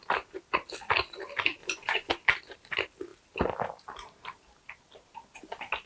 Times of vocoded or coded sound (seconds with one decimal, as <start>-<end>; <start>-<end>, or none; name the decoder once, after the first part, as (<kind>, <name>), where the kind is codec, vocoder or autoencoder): 1.6-2.1 (vocoder, Vocos)